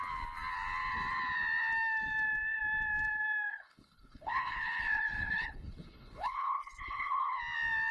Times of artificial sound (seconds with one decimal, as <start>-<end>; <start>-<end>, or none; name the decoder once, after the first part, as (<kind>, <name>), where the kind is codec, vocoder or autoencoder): 3.5-7.4 (codec, HILCodec)